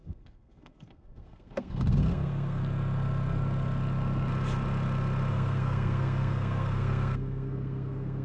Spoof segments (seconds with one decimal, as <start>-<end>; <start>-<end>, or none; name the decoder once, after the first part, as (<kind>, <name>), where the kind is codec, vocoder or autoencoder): 0.0-2.6 (codec, SNAC); 5.3-8.2